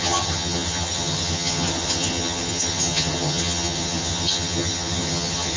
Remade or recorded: remade